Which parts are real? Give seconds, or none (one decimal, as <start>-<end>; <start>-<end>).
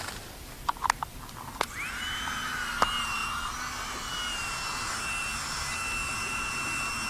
0.0-6.0; 6.6-7.1